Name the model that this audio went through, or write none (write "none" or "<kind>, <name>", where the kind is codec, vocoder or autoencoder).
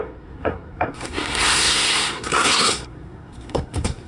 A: codec, SNAC